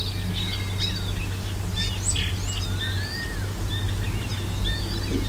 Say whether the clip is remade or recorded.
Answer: recorded